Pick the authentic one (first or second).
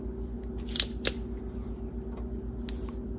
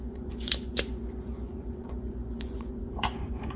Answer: first